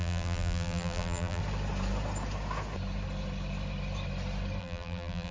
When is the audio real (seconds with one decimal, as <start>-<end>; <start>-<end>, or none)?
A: 1.4-4.6